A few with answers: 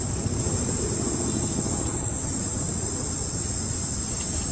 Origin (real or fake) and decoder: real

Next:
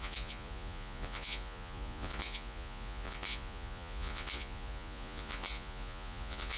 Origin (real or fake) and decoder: fake, vocoder, Vocos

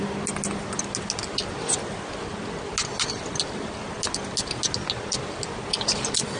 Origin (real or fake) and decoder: real